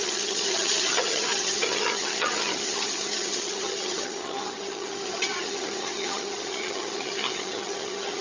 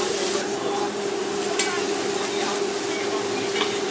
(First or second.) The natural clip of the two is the second